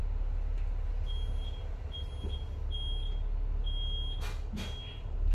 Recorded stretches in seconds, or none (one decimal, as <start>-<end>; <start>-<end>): 0.0-5.3